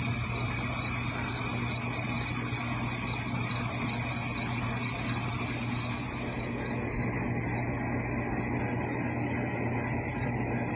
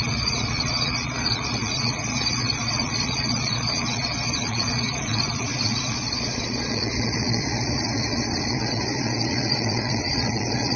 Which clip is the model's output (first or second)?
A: second